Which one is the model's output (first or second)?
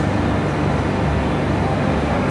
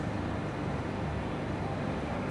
second